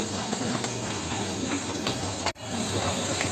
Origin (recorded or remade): remade